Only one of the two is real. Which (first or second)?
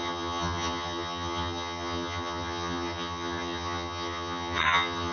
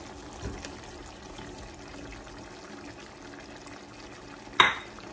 second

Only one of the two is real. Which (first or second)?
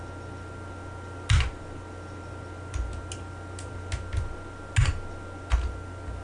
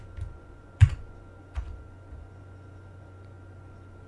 first